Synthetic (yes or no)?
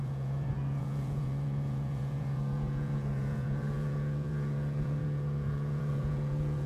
yes